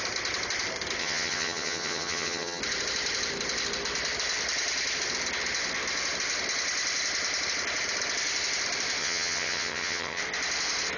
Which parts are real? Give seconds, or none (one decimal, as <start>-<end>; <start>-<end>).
0.0-1.0; 2.6-9.0; 10.2-11.0